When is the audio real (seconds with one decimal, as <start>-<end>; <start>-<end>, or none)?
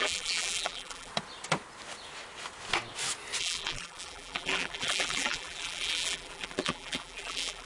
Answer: 1.1-3.4